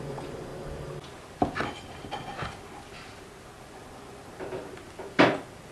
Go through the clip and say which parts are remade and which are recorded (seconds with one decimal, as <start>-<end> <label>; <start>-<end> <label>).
0.0-0.5 remade; 0.5-3.6 recorded; 3.6-4.2 remade; 4.2-5.7 recorded

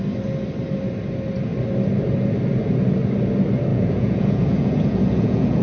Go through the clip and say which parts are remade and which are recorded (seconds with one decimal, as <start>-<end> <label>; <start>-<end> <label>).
0.0-3.7 recorded; 3.7-5.6 remade

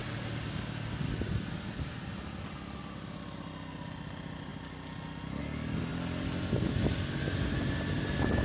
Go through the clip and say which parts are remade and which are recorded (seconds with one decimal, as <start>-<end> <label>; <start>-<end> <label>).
0.0-8.4 recorded

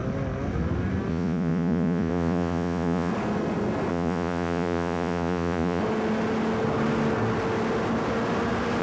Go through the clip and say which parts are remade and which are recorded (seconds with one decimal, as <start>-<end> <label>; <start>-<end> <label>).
0.0-1.1 recorded; 1.1-3.1 remade; 3.1-3.9 recorded; 3.9-5.8 remade; 5.8-8.8 recorded

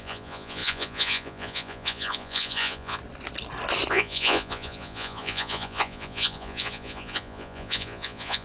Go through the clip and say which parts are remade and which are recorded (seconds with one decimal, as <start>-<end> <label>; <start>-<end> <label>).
0.0-3.0 remade; 3.0-3.9 recorded; 3.9-8.4 remade

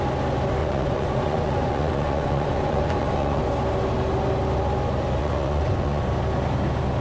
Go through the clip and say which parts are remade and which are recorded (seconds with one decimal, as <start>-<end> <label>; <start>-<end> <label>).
0.0-0.6 recorded; 0.6-3.4 remade; 3.4-5.2 recorded; 5.2-6.0 remade; 6.0-7.0 recorded

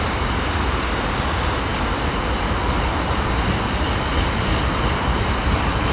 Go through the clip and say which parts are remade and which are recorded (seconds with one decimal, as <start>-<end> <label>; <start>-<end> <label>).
0.0-5.9 recorded